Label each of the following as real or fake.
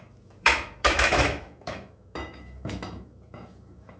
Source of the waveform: fake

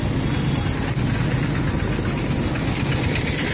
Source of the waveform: real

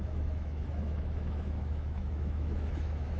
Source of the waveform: fake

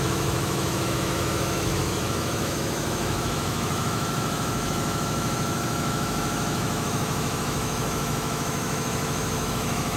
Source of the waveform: fake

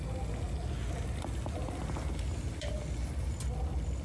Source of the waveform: real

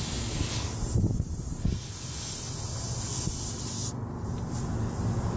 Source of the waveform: real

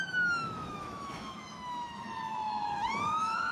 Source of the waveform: fake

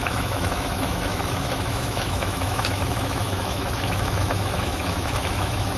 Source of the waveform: fake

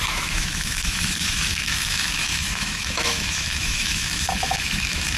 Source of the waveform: fake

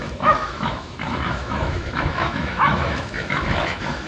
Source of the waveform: fake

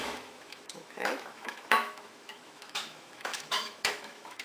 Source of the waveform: fake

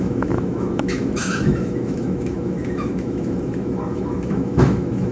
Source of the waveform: fake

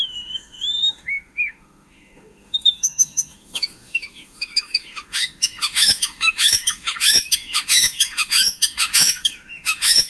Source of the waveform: fake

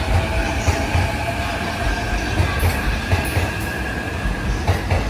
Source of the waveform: real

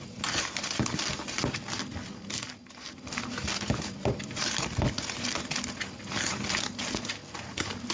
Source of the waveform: real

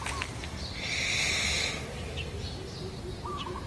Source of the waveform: real